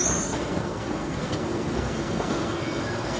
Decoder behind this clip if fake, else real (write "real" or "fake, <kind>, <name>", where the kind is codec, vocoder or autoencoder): fake, codec, SNAC